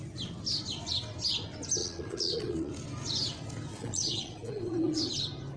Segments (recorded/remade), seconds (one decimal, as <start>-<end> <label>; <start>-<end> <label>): 0.0-1.8 recorded; 1.8-2.7 remade; 2.7-3.7 recorded; 3.7-5.0 remade; 5.0-5.6 recorded